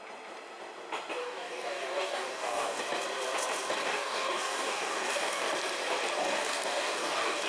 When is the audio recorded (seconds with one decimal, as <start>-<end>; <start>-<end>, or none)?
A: 0.0-1.2; 2.8-3.8; 5.5-6.2